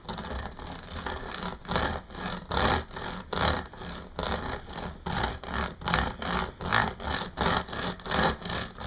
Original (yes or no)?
yes